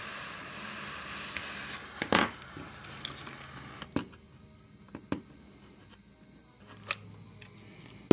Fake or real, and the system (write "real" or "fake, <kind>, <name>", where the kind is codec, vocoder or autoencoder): real